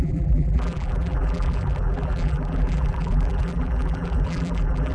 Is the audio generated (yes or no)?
yes